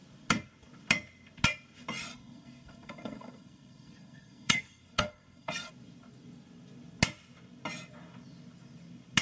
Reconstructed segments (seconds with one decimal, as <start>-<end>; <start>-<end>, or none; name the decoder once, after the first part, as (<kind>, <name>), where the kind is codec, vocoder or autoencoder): 2.1-5.7 (codec, SNAC)